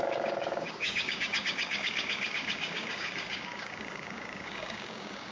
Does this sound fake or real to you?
fake